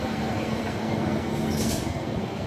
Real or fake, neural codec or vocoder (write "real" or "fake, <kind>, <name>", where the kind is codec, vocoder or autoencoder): fake, codec, SNAC